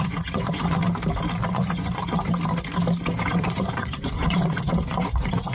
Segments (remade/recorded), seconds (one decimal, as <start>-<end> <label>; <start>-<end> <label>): 0.0-0.8 remade; 0.8-1.5 recorded; 1.5-2.3 remade; 2.3-3.3 recorded; 3.3-5.5 remade

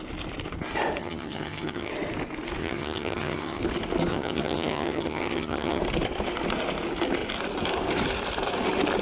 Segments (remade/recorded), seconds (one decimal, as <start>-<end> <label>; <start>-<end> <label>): 0.0-1.0 recorded; 1.0-1.9 remade; 1.9-2.6 recorded; 2.6-3.6 remade; 3.6-4.1 recorded; 4.1-5.8 remade; 5.8-9.0 recorded

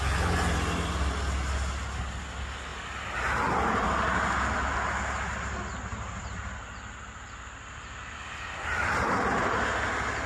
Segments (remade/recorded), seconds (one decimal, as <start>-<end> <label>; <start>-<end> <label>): 0.0-5.9 recorded; 5.9-9.2 remade; 9.2-10.3 recorded

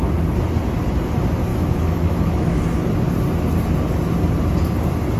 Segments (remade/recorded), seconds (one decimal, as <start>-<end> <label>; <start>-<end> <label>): 0.0-1.5 recorded; 1.5-2.6 remade; 2.6-5.2 recorded

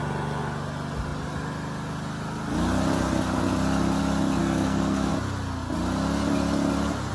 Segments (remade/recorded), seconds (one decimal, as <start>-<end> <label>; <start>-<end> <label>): 0.0-4.4 recorded; 4.4-5.1 remade; 5.1-7.1 recorded

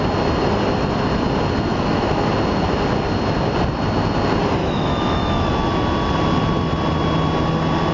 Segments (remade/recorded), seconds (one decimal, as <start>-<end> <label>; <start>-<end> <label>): 0.0-1.7 recorded; 1.7-2.3 remade; 2.3-4.6 recorded; 4.6-5.5 remade; 5.5-7.9 recorded

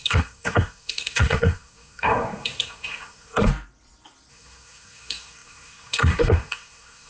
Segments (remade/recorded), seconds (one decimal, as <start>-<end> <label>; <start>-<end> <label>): 0.0-3.5 remade; 3.5-4.3 recorded; 4.3-7.1 remade

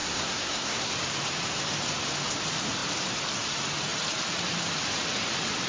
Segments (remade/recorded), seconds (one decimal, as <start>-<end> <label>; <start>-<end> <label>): 0.0-0.9 remade; 0.9-5.7 recorded